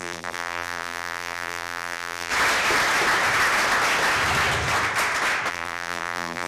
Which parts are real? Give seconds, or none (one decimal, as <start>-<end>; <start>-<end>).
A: 2.3-5.5

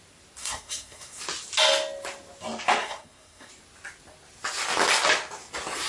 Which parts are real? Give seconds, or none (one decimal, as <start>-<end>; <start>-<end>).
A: 0.0-0.4; 1.2-2.8; 3.5-5.9

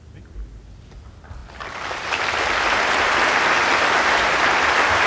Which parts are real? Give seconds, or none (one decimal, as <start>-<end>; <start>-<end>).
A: 0.0-5.1

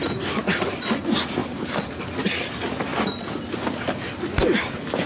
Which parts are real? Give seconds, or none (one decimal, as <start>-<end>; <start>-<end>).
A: 0.7-1.4; 2.0-2.9; 3.4-5.1

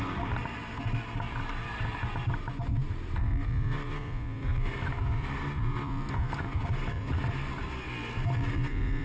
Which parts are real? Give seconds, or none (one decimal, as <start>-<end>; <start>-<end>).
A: 0.0-9.0

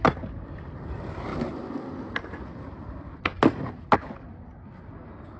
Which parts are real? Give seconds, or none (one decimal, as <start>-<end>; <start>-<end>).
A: 0.0-5.4

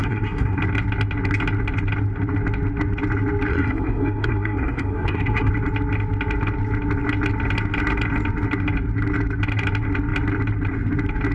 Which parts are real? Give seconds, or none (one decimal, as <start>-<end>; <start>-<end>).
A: 0.6-3.5; 5.5-11.3